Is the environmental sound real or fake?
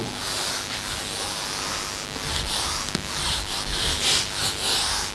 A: real